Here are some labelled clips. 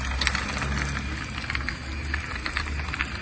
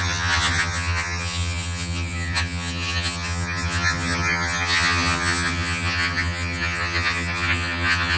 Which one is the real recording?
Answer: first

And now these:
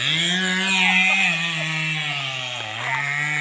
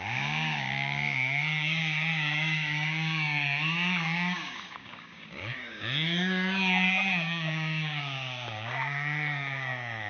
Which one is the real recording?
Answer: first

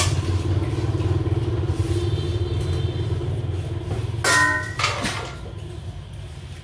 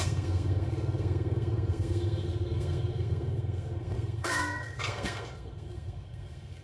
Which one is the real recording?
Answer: first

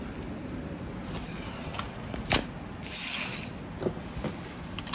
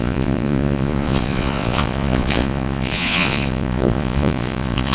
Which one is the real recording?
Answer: first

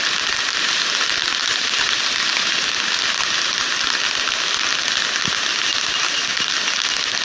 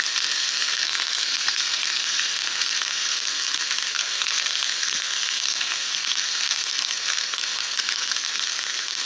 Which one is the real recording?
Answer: first